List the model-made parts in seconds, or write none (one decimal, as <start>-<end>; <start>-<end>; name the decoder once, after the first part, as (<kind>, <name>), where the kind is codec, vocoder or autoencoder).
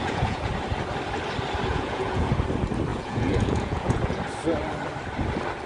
0.0-0.5 (vocoder, Vocos); 1.7-2.3; 2.9-4.2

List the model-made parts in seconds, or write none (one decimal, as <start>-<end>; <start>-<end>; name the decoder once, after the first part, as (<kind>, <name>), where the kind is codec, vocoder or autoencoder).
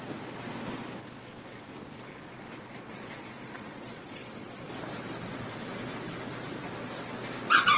1.0-4.7 (vocoder, Vocos)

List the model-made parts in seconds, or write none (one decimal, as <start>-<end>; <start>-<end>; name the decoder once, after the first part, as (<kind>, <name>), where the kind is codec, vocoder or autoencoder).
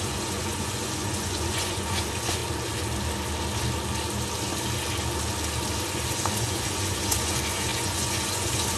0.0-2.4 (vocoder, Vocos); 5.9-8.8